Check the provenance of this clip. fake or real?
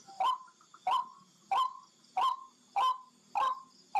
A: real